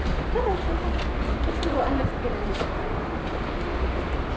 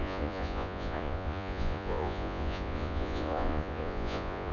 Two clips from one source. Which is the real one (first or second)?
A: first